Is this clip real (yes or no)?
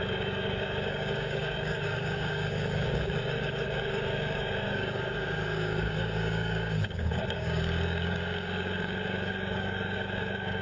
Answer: no